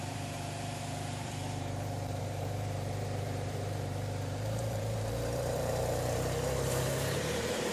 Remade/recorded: remade